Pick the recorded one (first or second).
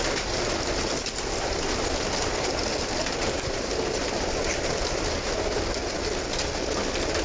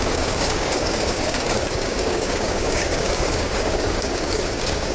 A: first